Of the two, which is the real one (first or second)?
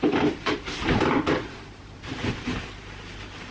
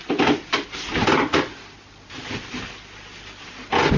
second